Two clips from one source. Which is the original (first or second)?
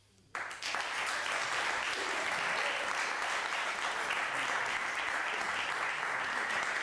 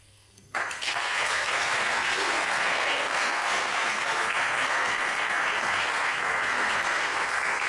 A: first